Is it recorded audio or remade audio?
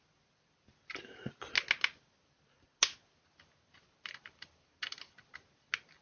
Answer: recorded